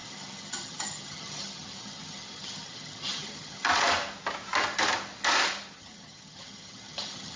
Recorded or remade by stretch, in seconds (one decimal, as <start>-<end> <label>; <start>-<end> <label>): 0.0-3.7 remade; 3.7-5.8 recorded; 5.8-7.4 remade